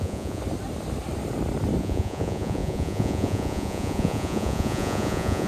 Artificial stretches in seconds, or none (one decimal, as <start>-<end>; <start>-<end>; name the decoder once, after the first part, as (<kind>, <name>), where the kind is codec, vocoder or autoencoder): 0.0-0.4 (vocoder, Vocos); 1.8-5.5